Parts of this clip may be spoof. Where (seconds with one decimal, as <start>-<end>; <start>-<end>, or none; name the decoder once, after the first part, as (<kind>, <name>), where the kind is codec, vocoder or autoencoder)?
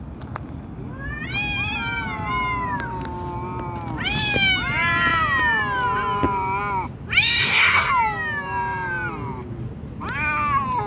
7.4-7.9 (codec, SNAC)